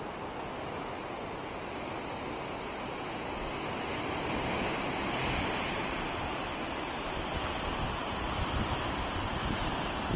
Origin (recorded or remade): recorded